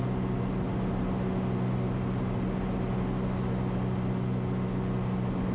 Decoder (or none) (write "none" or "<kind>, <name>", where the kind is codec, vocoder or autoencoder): none